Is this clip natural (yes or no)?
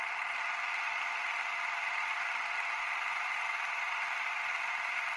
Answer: yes